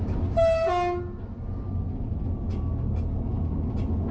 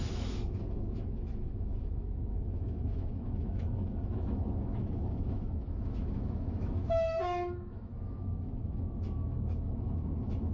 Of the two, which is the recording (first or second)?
first